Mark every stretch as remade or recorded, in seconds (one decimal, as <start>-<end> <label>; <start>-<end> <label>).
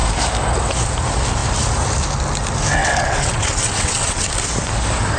0.0-2.8 recorded; 2.8-4.3 remade; 4.3-5.2 recorded